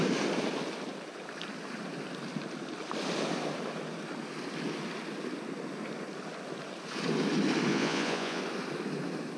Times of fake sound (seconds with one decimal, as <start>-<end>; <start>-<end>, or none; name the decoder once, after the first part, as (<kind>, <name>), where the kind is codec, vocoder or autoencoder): 7.7-8.4 (vocoder, Vocos)